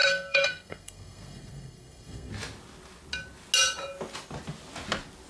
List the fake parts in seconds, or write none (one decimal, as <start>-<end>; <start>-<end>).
0.0-2.3